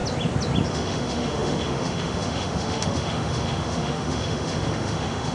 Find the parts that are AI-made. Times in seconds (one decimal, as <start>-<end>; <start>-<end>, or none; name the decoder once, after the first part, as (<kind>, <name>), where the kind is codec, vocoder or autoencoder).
0.7-5.3 (autoencoder, DAC-VAE)